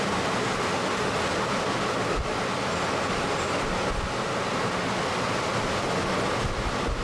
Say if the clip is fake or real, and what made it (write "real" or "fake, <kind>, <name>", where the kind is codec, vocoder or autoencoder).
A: real